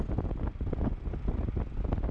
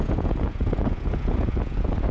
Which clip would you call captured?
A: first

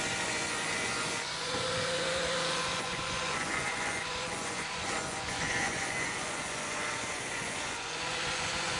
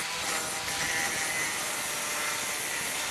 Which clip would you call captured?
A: second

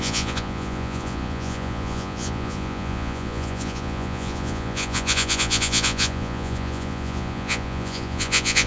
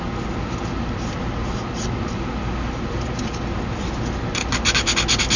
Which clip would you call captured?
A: second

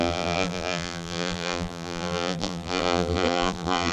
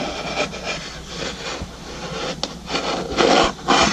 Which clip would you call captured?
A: second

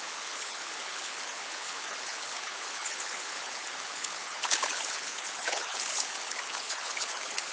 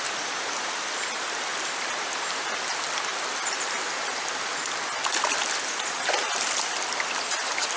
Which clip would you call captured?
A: second